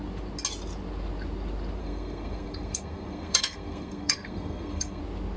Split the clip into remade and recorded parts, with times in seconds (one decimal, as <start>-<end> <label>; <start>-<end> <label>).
0.0-1.8 recorded; 1.8-5.0 remade; 5.0-5.4 recorded